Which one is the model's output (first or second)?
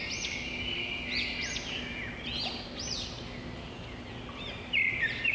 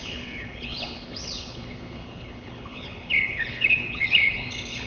second